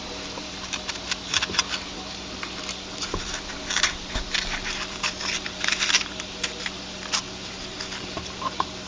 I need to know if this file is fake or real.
fake